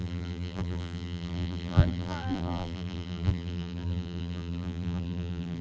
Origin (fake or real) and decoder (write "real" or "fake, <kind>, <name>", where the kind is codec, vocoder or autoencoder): fake, vocoder, BigVGAN v2